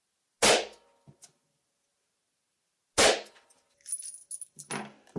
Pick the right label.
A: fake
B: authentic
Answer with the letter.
B